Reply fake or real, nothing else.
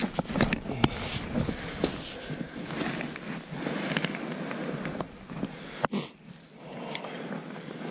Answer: real